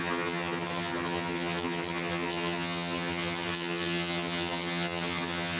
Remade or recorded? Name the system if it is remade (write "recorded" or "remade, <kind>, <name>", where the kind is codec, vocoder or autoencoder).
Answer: remade, vocoder, HiFi-GAN